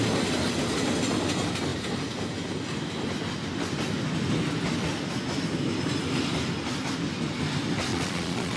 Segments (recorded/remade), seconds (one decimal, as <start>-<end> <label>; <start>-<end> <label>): 0.0-7.9 recorded; 7.9-8.6 remade